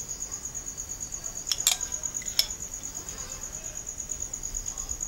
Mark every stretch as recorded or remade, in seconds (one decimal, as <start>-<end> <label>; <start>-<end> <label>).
0.0-5.1 recorded